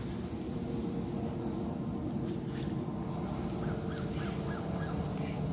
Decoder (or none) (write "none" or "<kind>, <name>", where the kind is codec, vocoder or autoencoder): none